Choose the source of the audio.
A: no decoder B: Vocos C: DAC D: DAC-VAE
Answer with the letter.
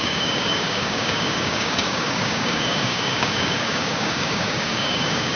C